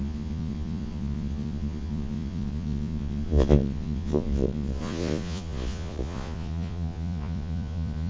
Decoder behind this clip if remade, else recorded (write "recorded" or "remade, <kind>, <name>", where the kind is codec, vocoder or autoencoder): remade, vocoder, Vocos